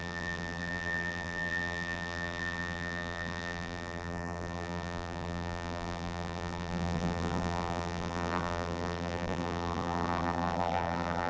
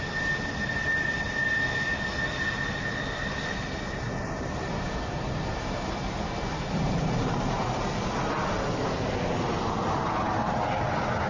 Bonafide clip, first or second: second